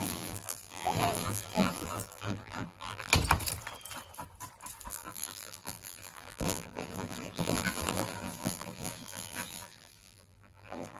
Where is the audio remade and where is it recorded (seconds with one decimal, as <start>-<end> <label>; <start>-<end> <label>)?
0.0-3.1 remade; 3.1-4.9 recorded; 4.9-11.0 remade